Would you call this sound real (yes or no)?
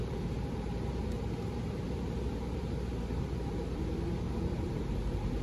no